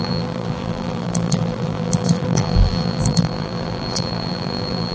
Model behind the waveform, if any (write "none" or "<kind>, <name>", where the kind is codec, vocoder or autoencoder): vocoder, BigVGAN v2